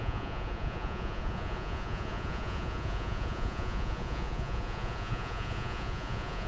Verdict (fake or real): fake